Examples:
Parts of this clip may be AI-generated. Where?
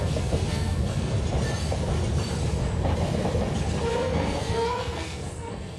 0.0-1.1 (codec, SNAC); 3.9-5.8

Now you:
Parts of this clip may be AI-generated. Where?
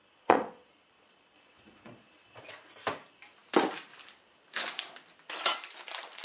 0.0-2.4 (vocoder, Vocos)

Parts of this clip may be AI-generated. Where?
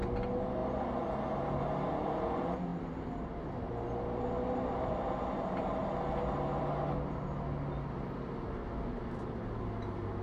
none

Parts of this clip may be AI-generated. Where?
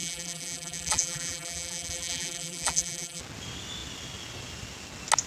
0.0-3.2 (vocoder, BigVGAN v2)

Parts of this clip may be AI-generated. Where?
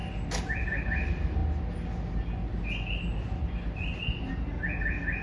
none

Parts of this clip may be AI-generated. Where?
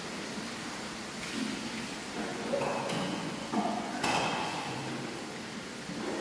2.3-4.8 (vocoder, Vocos)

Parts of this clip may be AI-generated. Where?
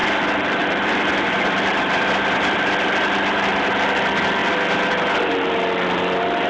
0.0-2.3 (vocoder, BigVGAN v2); 4.4-5.3